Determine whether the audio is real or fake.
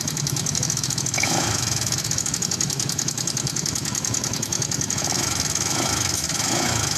fake